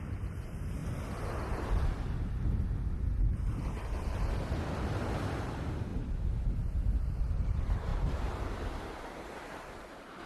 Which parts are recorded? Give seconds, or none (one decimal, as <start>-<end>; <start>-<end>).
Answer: 0.8-4.6; 5.9-7.2